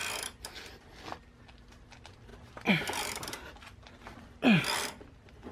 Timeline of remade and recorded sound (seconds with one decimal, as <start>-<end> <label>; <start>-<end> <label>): 0.0-5.5 recorded